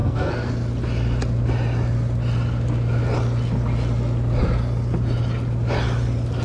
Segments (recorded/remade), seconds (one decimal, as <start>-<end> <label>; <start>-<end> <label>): 0.0-0.5 remade; 0.5-6.4 recorded